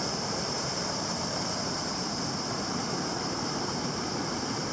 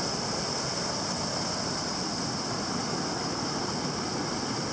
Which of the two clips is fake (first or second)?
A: first